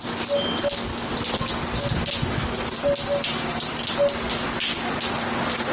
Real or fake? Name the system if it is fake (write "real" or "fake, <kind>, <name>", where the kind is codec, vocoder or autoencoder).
real